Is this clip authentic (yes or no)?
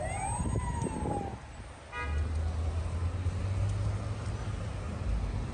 yes